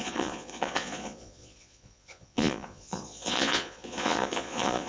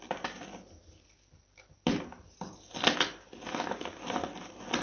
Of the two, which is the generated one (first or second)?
first